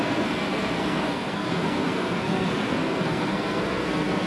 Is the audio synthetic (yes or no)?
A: yes